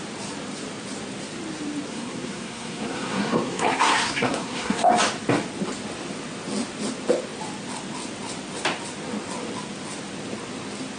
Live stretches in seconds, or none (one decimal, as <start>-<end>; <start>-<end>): 0.0-1.9; 4.9-11.0